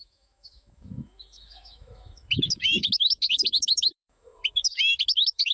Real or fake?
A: fake